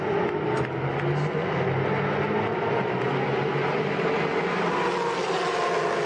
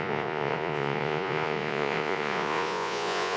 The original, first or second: first